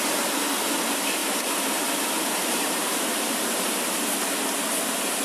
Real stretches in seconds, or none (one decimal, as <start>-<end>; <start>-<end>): 0.0-1.2; 4.0-5.2